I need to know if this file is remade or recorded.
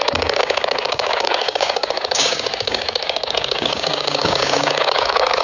remade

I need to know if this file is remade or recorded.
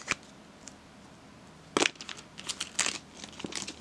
recorded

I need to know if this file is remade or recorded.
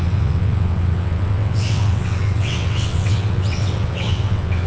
remade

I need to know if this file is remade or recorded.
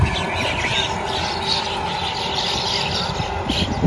recorded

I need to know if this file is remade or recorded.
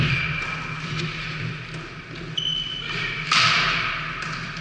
recorded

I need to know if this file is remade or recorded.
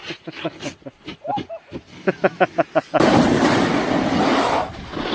recorded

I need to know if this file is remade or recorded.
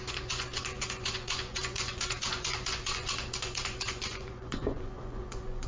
remade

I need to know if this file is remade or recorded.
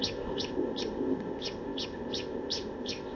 remade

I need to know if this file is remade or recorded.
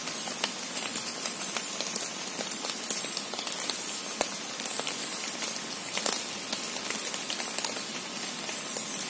recorded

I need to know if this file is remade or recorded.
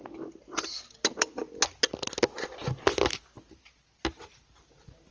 recorded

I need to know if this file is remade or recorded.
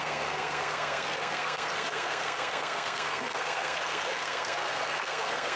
remade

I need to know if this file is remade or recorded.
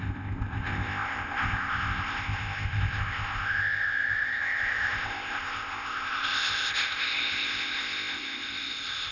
remade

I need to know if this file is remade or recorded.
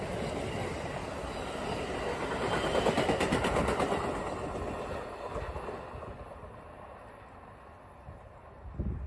recorded